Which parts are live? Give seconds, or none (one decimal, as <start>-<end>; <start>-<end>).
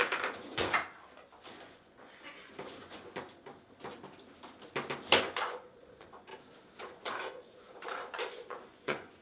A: 0.8-1.5; 3.5-5.2; 6.3-6.8